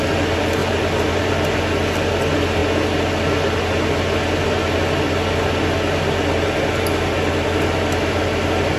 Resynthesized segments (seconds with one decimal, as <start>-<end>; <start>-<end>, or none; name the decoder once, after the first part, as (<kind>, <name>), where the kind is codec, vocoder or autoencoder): 0.6-1.6 (vocoder, BigVGAN v2)